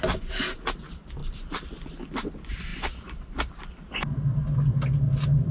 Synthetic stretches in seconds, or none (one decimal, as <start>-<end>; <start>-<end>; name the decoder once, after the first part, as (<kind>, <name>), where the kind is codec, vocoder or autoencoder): 1.2-1.9 (vocoder, BigVGAN v2); 2.7-3.5